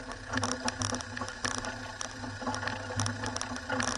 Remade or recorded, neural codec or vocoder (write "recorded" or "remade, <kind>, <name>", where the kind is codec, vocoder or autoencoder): recorded